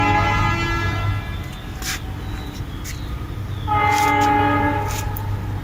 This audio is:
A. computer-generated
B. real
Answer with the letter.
B